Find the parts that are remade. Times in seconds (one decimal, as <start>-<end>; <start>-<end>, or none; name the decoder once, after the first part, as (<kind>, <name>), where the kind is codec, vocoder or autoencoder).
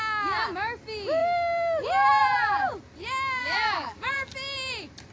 2.2-2.8 (vocoder, BigVGAN v2); 3.4-4.3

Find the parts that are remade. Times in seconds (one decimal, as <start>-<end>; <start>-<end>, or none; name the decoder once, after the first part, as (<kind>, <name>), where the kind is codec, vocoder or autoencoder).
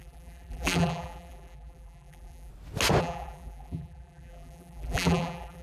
0.0-2.5 (vocoder, BigVGAN v2); 3.0-5.6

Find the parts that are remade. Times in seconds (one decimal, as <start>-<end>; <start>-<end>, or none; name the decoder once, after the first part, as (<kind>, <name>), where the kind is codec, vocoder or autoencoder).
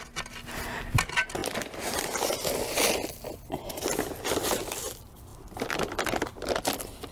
1.4-2.5 (vocoder, BigVGAN v2); 5.3-6.0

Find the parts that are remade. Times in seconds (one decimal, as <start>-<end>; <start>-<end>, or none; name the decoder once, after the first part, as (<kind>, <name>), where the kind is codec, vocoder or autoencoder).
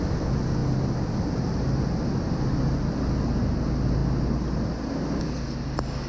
none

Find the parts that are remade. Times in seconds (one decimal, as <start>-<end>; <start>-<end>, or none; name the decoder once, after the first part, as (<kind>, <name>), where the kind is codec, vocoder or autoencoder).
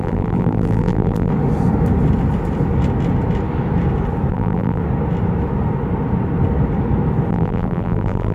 0.0-1.3 (vocoder, BigVGAN v2); 4.3-4.8; 7.3-8.3